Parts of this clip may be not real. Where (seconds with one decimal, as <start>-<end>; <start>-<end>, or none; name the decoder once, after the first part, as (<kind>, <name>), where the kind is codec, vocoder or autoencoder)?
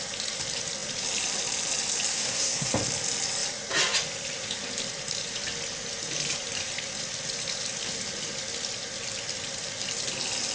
2.1-2.7 (codec, SNAC)